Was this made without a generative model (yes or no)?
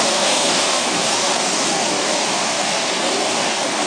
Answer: no